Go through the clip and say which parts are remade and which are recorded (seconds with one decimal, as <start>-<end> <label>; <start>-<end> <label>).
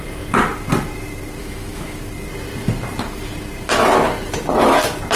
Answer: 0.0-1.4 recorded; 1.4-2.0 remade; 2.0-5.2 recorded